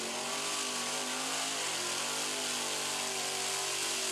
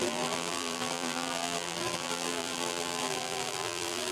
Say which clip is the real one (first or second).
first